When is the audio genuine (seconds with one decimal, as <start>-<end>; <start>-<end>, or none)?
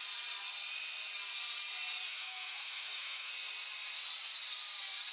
0.0-2.1; 3.3-5.1